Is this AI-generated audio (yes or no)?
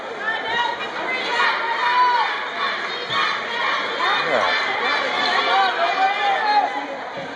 no